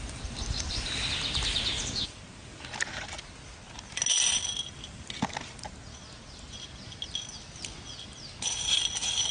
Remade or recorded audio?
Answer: recorded